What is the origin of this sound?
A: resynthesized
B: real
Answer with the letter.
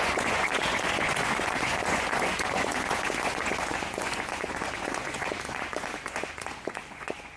A